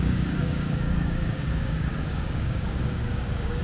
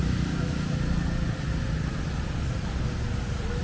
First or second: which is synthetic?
first